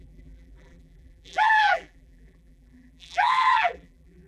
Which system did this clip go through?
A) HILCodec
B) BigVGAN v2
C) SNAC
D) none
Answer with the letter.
B